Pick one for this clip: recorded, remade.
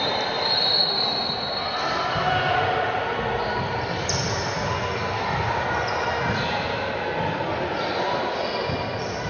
recorded